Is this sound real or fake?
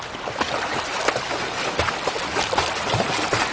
real